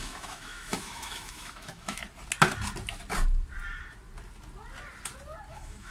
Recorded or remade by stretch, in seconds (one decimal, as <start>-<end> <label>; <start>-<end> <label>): 0.0-2.0 remade; 2.0-5.5 recorded; 5.5-5.9 remade